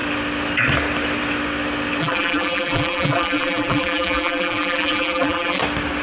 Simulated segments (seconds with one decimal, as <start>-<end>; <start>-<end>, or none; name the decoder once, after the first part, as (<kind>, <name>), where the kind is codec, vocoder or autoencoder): 2.0-5.6 (vocoder, BigVGAN v2)